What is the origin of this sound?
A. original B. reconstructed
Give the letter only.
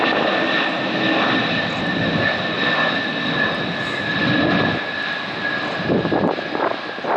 A